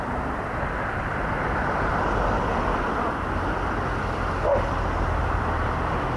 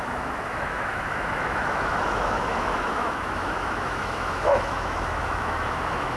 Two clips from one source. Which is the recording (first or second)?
first